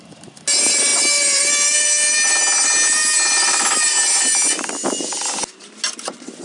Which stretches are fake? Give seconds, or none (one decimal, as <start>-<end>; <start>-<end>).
none